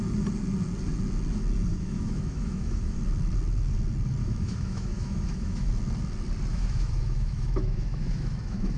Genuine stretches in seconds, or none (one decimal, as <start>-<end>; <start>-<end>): 0.0-1.7; 3.0-4.2; 5.7-6.5